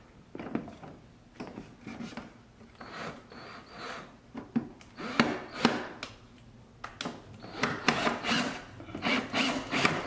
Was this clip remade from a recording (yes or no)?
no